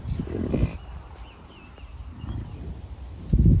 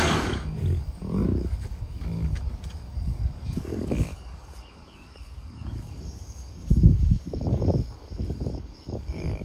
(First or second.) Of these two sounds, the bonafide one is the first